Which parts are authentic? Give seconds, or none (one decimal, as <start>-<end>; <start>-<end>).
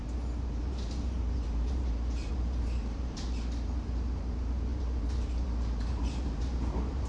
none